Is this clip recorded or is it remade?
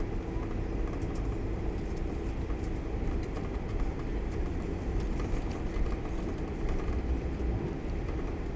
recorded